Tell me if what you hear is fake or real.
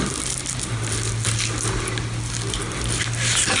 real